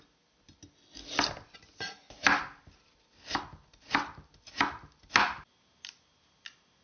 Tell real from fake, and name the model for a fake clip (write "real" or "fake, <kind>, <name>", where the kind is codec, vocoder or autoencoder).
real